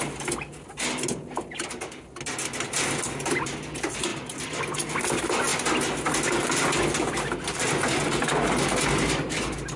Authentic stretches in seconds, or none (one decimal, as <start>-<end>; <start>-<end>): 0.0-9.8